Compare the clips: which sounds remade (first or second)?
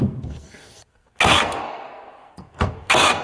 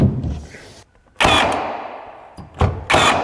first